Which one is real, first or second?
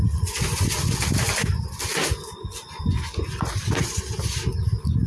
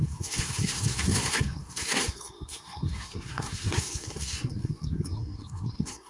first